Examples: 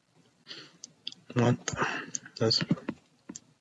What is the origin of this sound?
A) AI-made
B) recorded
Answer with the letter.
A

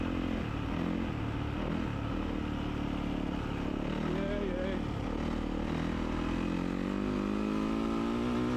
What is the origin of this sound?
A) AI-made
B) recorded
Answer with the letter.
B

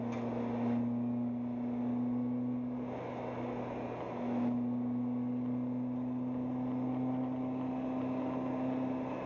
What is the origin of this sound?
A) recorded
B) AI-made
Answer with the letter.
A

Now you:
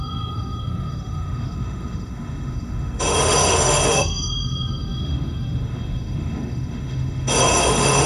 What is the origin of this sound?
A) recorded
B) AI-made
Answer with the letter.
B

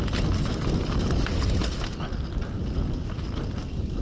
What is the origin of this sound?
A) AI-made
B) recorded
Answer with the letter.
B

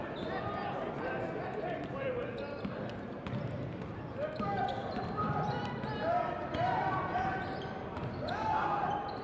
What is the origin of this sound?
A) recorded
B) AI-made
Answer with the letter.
A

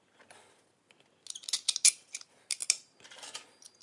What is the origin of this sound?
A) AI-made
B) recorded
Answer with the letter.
B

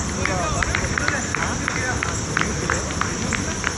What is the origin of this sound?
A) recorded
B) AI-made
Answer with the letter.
B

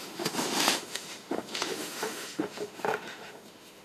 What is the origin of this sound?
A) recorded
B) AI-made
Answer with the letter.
B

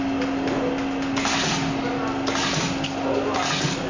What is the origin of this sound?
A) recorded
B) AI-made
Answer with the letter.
A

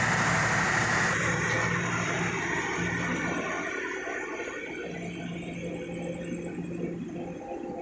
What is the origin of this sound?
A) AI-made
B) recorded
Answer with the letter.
B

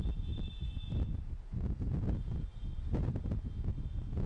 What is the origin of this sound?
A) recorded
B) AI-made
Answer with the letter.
A